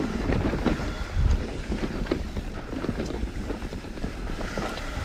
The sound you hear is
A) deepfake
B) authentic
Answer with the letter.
A